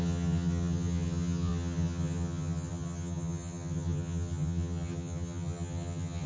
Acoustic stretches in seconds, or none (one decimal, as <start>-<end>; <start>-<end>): none